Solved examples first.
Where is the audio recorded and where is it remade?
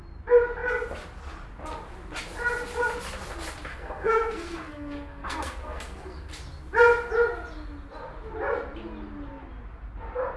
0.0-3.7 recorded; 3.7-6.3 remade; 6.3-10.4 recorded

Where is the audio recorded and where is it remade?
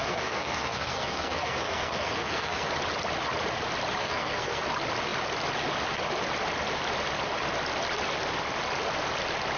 0.0-2.7 remade; 2.7-4.0 recorded; 4.0-4.6 remade; 4.6-9.6 recorded